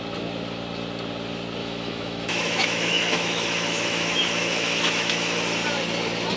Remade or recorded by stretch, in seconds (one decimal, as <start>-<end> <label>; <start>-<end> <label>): 0.0-1.6 recorded; 1.6-5.4 remade; 5.4-6.4 recorded